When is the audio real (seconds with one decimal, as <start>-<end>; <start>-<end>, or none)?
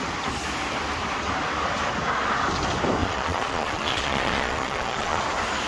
0.0-3.0; 5.2-5.7